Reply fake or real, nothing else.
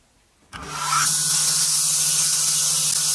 real